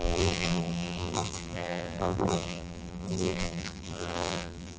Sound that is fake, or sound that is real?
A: fake